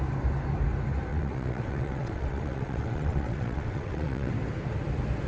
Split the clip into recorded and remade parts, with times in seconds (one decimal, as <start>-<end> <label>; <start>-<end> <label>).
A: 0.0-1.1 recorded; 1.1-4.3 remade; 4.3-5.3 recorded